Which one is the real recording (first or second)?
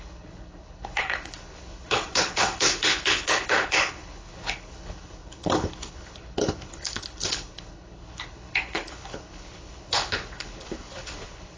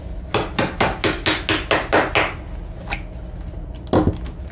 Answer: second